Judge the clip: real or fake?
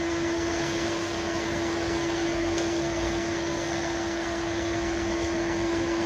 fake